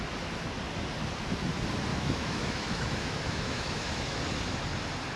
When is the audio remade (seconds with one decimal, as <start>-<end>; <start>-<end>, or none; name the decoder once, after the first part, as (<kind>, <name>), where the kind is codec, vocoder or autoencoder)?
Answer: 1.9-4.2 (autoencoder, DAC-VAE)